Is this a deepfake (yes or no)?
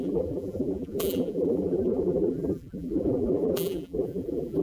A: yes